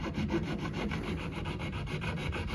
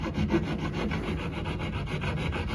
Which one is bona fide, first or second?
second